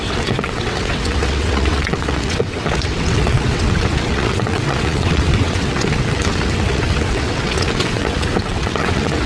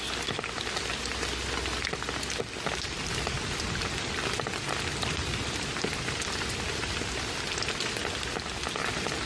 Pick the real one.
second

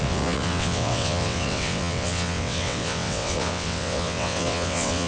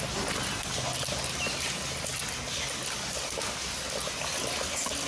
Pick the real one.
second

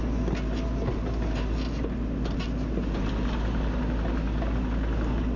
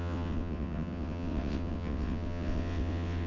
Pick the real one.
first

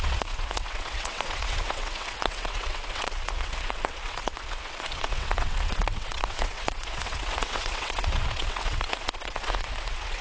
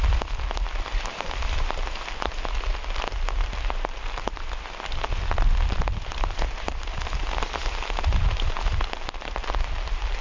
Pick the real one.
second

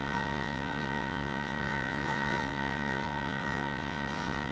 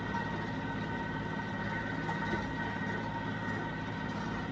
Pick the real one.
second